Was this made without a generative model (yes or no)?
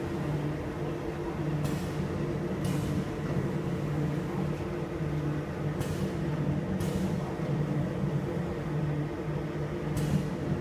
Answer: yes